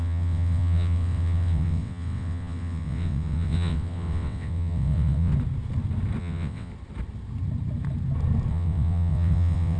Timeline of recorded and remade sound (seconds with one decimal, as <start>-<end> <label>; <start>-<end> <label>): 0.0-5.3 remade; 5.3-6.2 recorded; 6.2-6.7 remade; 6.7-8.5 recorded; 8.5-9.8 remade